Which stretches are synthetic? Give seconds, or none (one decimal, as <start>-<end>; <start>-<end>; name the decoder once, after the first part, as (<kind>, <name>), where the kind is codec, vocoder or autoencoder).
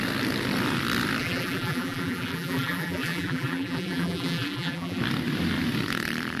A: 1.2-5.0 (vocoder, BigVGAN v2)